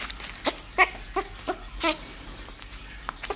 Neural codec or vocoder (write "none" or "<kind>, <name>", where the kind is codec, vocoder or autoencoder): none